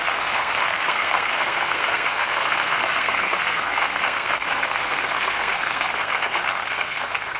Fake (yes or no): yes